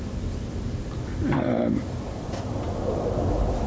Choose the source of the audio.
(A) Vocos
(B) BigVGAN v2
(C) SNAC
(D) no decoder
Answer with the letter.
D